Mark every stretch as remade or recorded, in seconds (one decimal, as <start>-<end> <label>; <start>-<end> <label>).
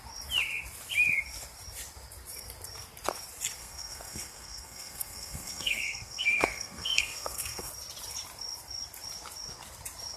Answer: 0.0-3.6 recorded; 3.6-7.7 remade; 7.7-10.2 recorded